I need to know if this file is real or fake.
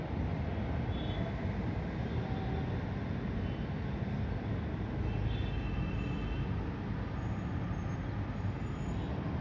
real